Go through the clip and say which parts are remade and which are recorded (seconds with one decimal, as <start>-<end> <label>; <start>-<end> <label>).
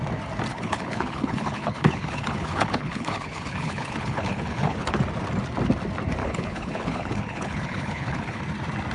0.0-0.5 recorded; 0.5-5.0 remade; 5.0-6.2 recorded; 6.2-8.4 remade; 8.4-8.9 recorded